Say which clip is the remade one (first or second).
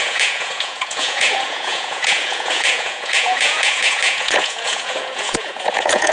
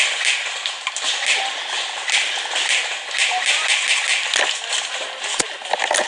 first